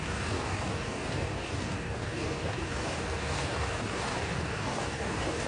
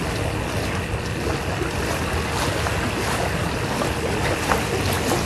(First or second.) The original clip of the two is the second